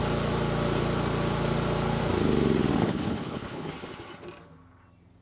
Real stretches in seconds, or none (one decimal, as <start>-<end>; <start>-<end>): 0.0-2.8; 3.7-5.2